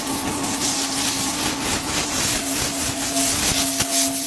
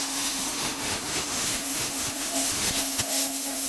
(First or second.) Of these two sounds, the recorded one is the first